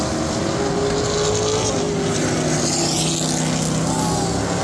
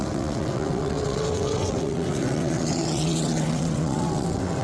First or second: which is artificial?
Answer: second